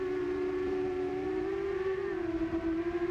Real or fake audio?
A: fake